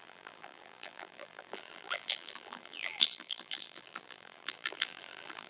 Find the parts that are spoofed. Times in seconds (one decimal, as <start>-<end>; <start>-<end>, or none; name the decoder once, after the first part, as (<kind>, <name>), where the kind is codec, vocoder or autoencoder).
0.0-5.5 (vocoder, BigVGAN v2)